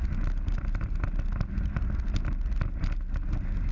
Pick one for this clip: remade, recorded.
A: recorded